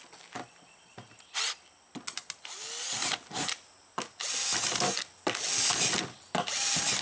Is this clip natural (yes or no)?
yes